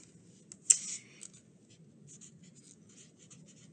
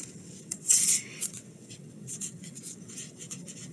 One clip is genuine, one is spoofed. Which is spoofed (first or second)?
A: second